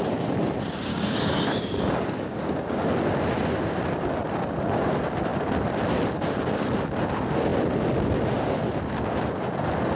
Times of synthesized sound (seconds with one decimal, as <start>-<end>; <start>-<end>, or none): 0.9-2.9